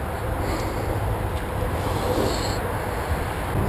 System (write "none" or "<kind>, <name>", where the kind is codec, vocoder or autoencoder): none